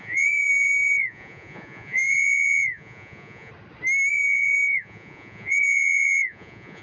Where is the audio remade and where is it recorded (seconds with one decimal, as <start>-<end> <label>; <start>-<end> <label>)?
0.0-3.5 remade; 3.5-4.1 recorded; 4.1-6.8 remade